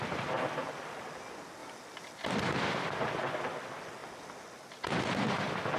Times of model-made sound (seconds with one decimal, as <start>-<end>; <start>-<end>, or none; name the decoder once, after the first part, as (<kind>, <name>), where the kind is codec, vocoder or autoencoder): none